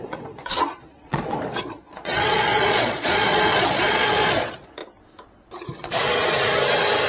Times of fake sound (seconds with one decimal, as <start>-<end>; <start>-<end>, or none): 0.0-4.8